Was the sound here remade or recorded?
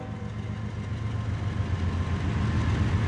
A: recorded